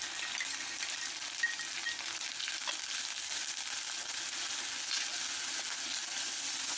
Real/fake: real